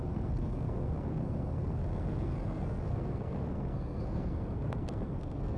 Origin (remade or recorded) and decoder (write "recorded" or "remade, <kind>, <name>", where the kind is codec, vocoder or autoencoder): remade, codec, SNAC